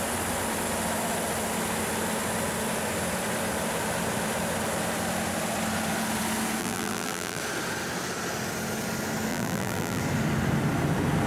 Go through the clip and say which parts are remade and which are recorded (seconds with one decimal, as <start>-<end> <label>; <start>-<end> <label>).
0.0-6.6 recorded; 6.6-7.4 remade; 7.4-9.3 recorded; 9.3-10.0 remade; 10.0-11.3 recorded